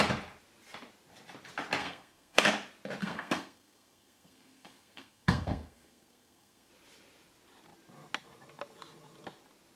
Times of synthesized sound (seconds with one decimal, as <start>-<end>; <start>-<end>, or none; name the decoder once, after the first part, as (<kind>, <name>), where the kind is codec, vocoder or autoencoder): 1.8-2.4 (codec, SNAC); 3.0-6.7